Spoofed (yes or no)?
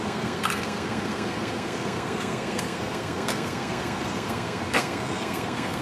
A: yes